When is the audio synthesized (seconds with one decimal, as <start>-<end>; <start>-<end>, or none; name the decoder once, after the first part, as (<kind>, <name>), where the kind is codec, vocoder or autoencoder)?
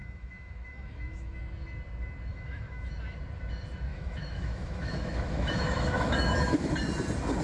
0.0-1.4 (autoencoder, DAC-VAE); 2.3-2.9; 3.9-6.7